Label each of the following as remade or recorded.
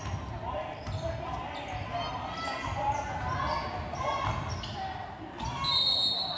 recorded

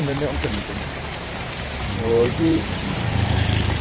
remade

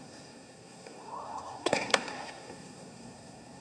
remade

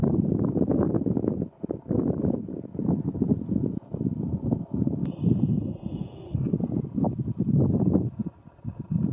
recorded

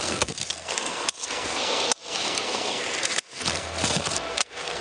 remade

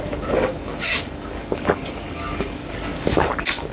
remade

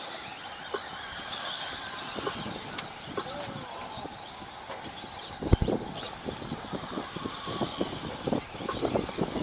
recorded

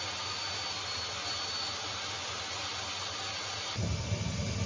recorded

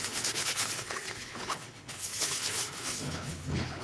remade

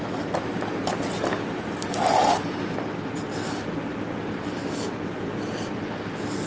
recorded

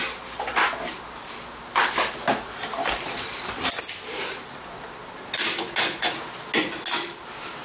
recorded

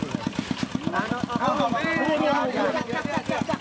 recorded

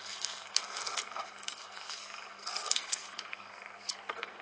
remade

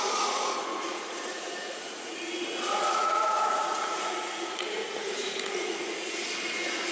remade